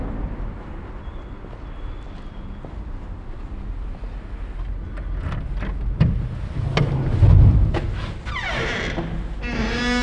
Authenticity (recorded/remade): recorded